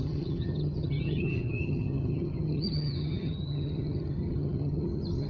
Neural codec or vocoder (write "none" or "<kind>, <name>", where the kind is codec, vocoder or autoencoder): vocoder, HiFi-GAN